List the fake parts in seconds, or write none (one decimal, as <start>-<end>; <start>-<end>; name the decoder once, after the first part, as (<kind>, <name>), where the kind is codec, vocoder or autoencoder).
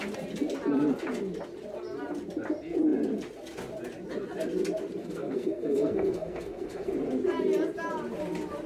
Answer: 5.0-6.9 (codec, SNAC)